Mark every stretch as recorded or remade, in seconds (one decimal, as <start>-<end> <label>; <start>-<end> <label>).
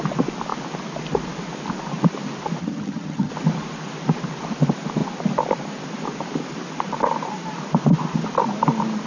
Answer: 0.0-2.6 recorded; 2.6-3.3 remade; 3.3-9.1 recorded